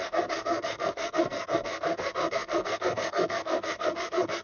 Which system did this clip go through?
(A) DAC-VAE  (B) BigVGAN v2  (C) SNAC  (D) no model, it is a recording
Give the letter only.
C